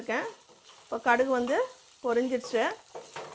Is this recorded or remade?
recorded